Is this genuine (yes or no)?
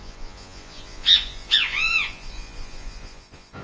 no